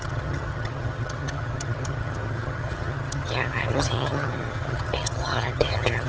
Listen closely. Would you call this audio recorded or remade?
remade